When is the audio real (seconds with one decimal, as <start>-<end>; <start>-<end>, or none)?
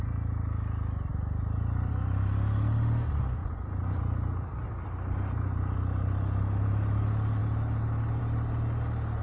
0.0-3.4; 4.0-9.2